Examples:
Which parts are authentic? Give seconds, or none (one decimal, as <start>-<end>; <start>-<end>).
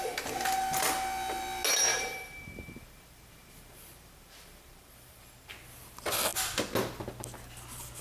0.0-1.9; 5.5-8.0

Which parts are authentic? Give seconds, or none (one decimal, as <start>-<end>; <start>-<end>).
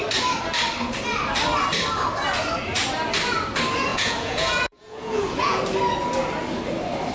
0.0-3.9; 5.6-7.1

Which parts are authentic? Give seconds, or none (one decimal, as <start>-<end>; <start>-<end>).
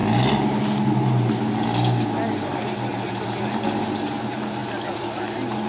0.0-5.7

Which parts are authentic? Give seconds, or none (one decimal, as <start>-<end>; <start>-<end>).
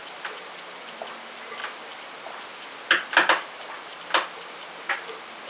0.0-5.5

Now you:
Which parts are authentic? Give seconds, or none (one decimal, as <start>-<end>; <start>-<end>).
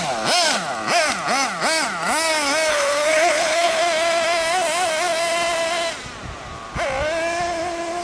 0.0-2.7; 3.8-8.0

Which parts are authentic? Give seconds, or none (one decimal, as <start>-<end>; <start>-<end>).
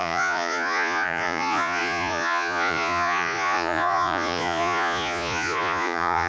none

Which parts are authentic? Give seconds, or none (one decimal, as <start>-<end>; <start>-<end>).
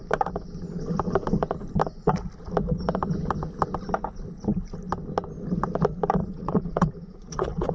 0.0-6.2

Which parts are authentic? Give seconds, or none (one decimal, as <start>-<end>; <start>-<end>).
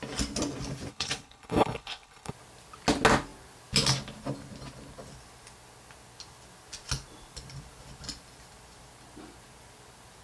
0.0-0.9; 2.3-10.2